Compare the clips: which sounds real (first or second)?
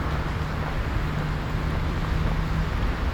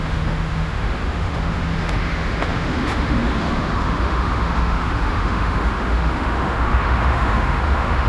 first